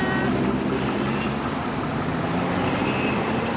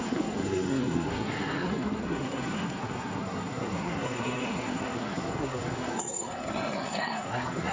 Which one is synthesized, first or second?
second